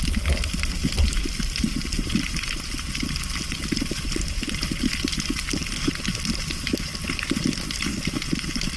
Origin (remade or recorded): recorded